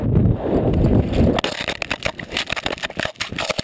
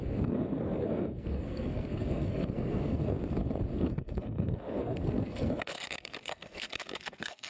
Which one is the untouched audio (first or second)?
first